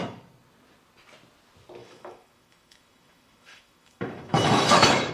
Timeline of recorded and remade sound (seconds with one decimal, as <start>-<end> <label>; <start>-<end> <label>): 0.0-1.8 recorded; 1.8-5.1 remade